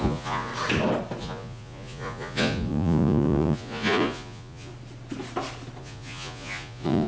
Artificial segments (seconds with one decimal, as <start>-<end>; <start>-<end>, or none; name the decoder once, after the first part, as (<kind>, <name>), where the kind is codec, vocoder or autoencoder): 0.0-0.5 (vocoder, Vocos); 1.2-4.7; 5.8-7.1